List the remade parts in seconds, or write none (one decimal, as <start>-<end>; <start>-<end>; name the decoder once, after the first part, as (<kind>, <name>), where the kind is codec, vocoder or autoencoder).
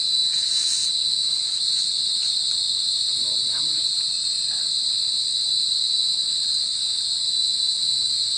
1.2-4.7 (vocoder, Vocos)